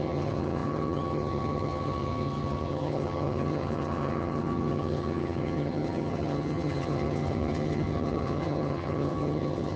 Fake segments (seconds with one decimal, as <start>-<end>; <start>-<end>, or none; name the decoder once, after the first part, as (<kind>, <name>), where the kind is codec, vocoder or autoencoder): 0.0-9.8 (vocoder, HiFi-GAN)